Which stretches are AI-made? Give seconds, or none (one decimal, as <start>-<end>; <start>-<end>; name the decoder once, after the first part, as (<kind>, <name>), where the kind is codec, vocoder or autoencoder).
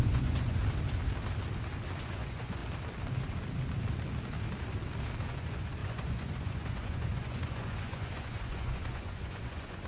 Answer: 0.0-0.6 (vocoder, Vocos); 2.0-2.6; 5.2-9.9